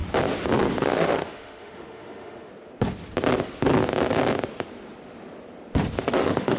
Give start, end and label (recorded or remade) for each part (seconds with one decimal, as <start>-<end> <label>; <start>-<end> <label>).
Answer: 0.0-0.8 recorded; 0.8-2.5 remade; 2.5-6.0 recorded; 6.0-6.6 remade